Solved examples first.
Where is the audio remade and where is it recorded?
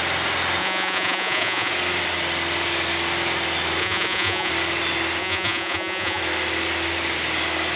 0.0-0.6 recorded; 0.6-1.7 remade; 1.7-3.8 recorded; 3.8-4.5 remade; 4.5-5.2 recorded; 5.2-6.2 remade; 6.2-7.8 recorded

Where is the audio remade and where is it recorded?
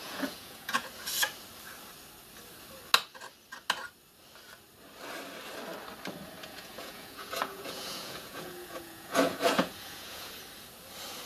0.0-0.9 remade; 0.9-6.4 recorded; 6.4-10.3 remade; 10.3-11.3 recorded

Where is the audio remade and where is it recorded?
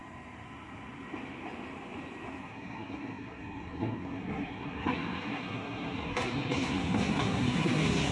0.0-2.4 recorded; 2.4-8.1 remade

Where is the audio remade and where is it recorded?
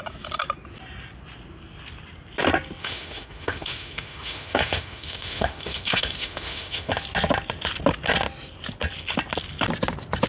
0.0-2.8 recorded; 2.8-6.9 remade; 6.9-10.3 recorded